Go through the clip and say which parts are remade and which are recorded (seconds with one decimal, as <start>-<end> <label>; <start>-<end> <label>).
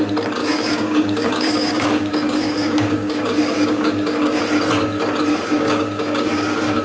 0.0-0.4 recorded; 0.4-4.4 remade; 4.4-5.3 recorded; 5.3-6.8 remade